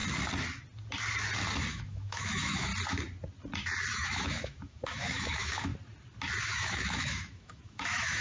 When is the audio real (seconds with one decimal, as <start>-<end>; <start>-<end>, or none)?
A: 0.0-1.7; 2.7-3.9; 5.7-6.4